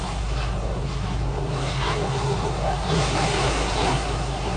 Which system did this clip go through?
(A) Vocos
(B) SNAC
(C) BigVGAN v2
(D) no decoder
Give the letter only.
B